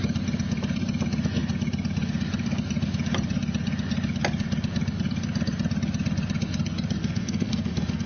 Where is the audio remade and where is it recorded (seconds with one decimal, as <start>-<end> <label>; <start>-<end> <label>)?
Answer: 0.0-7.0 recorded; 7.0-8.1 remade